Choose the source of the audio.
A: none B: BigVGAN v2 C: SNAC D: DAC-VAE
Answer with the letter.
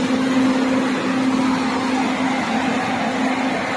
A